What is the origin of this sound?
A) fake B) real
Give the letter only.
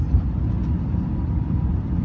B